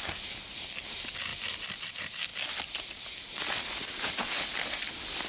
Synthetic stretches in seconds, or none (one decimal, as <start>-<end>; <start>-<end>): none